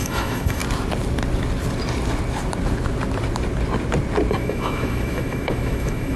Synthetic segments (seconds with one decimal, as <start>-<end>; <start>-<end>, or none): 0.0-0.6; 4.3-6.2